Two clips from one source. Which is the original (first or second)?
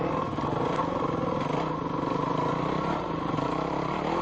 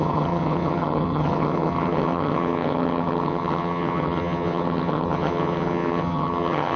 first